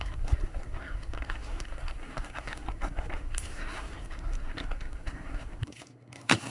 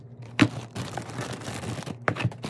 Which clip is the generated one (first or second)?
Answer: first